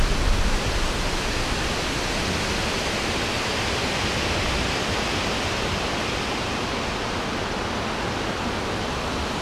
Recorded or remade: recorded